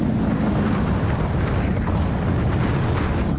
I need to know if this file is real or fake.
real